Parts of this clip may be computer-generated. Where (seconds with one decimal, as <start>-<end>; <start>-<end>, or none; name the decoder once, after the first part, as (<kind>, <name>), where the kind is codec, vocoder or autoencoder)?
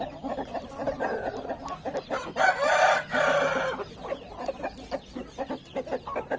none